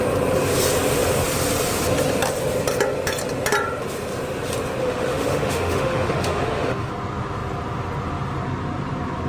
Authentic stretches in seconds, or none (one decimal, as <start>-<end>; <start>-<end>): 0.0-4.8; 6.9-9.3